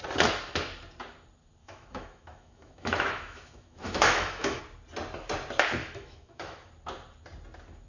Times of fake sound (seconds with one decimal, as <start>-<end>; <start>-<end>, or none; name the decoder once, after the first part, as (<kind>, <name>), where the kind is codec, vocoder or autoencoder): 1.6-4.6 (autoencoder, DAC-VAE); 5.8-6.7